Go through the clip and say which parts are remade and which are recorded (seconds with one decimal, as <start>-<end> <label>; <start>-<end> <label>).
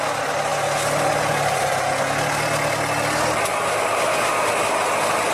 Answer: 0.0-5.3 recorded